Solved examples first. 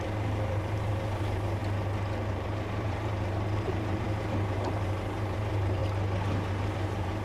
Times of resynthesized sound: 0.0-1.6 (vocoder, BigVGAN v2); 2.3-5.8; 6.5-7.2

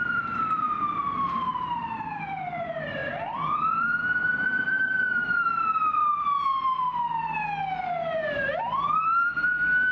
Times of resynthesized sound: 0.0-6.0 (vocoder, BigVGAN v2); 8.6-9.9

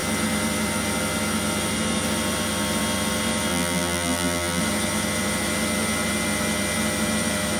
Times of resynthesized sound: 3.5-4.6 (vocoder, BigVGAN v2)

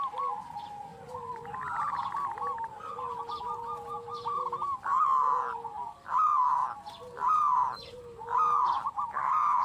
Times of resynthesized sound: 0.0-0.9 (vocoder, BigVGAN v2); 3.4-6.6; 9.2-9.6

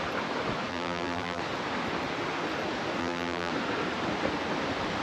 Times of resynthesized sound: 0.7-1.4 (vocoder, BigVGAN v2); 3.0-3.5

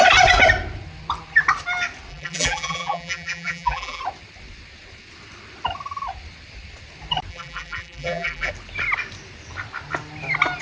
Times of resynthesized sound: 2.1-4.0 (vocoder, BigVGAN v2); 7.3-8.5